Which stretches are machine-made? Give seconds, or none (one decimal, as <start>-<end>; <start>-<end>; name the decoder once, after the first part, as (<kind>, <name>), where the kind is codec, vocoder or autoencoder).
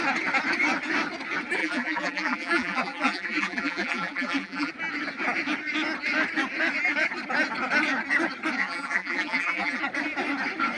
1.6-4.7 (vocoder, BigVGAN v2); 8.6-9.8